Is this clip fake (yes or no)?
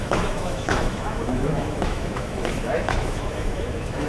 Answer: yes